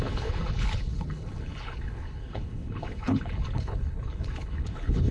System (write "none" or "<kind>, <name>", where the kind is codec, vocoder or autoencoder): codec, HILCodec